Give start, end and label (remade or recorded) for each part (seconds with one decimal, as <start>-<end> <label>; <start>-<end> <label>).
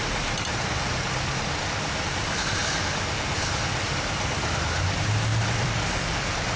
0.0-6.6 recorded